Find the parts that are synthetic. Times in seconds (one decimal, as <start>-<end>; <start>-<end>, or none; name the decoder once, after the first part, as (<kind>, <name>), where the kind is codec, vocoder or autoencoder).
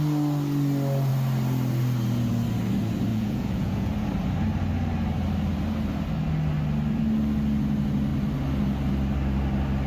3.1-3.9 (vocoder, Vocos)